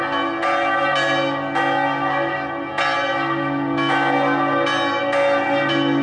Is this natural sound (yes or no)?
yes